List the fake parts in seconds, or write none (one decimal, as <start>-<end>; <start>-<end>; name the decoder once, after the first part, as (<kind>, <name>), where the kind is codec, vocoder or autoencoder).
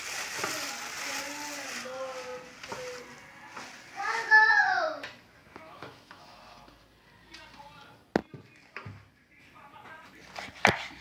5.4-6.4 (autoencoder, DAC-VAE)